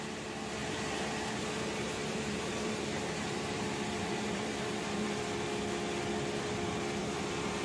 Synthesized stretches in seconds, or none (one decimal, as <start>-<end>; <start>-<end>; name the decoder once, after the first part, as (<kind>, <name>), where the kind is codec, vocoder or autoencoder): 0.6-5.2 (vocoder, BigVGAN v2); 7.0-7.6